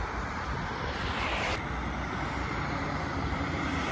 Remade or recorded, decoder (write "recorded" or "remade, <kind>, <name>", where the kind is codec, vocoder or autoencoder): remade, vocoder, BigVGAN v2